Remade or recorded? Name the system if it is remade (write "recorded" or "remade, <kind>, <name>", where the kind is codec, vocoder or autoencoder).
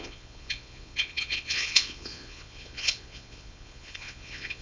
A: remade, vocoder, Vocos